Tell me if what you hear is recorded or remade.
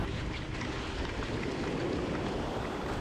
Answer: recorded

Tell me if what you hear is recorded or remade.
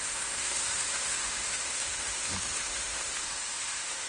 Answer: remade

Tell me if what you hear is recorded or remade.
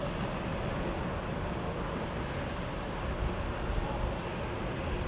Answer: recorded